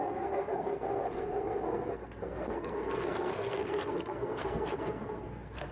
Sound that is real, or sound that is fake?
fake